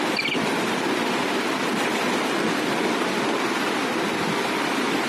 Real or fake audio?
fake